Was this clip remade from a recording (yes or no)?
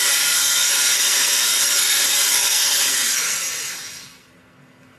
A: yes